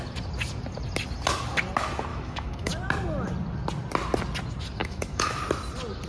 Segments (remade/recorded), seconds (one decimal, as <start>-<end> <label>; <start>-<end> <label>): 0.0-2.1 recorded; 2.1-2.7 remade; 2.7-4.8 recorded; 4.8-5.4 remade; 5.4-6.1 recorded